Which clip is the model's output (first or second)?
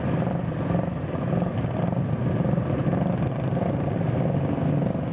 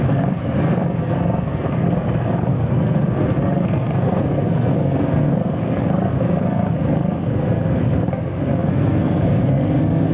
second